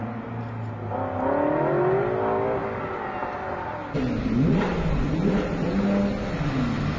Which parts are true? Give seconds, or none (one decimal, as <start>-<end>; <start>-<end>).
0.0-7.0